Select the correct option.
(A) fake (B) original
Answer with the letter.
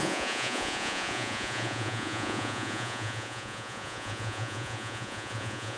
A